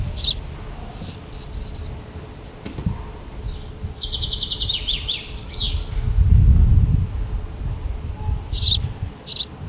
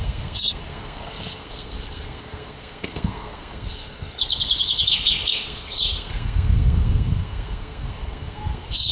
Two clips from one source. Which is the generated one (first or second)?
second